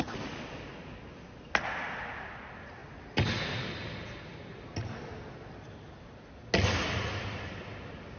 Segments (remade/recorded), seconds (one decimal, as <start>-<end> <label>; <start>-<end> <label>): 0.0-8.2 recorded